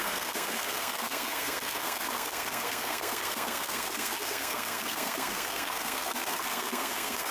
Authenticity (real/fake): fake